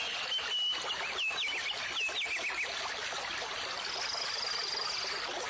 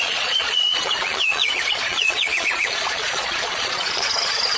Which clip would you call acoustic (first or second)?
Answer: first